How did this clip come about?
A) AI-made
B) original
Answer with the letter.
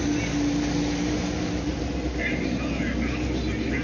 B